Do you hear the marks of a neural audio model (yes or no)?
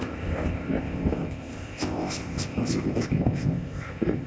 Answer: yes